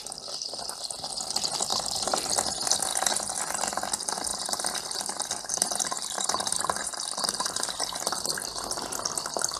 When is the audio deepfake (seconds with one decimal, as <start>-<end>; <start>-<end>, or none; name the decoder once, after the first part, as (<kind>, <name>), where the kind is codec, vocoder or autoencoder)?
1.7-2.3 (vocoder, BigVGAN v2); 4.3-7.8